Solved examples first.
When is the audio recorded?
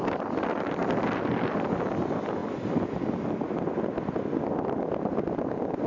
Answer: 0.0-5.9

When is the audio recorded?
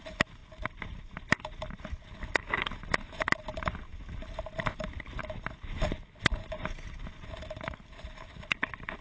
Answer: 0.0-9.0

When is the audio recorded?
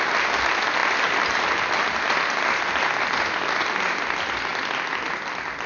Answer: 0.0-5.7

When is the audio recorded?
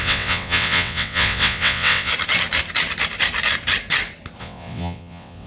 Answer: 2.1-4.4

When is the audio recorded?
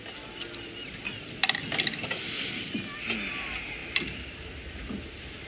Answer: 0.0-5.5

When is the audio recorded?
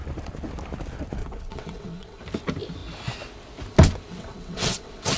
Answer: 0.0-1.2; 2.2-4.1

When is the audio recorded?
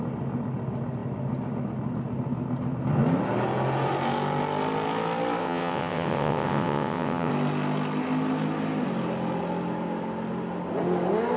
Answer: 0.0-5.4; 7.3-11.4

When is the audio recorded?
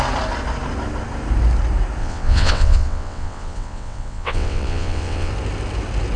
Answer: 0.0-2.0; 5.3-6.2